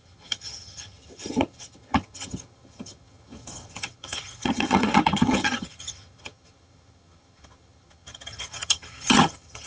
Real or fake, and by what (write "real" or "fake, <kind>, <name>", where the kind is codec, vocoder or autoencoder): fake, vocoder, HiFi-GAN